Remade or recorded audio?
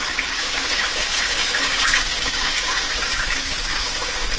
remade